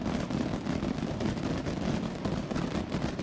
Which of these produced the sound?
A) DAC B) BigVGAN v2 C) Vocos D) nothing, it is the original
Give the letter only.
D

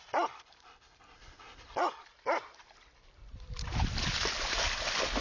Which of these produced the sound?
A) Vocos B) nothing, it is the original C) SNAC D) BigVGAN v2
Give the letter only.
D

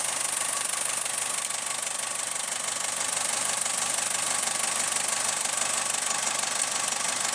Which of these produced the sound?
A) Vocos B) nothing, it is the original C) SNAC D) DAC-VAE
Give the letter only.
B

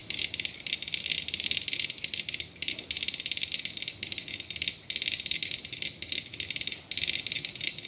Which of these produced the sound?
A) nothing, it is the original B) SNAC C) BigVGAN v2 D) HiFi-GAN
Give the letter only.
A